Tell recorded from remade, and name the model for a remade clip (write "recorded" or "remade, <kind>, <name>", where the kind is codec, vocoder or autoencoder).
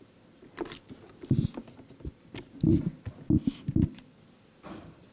recorded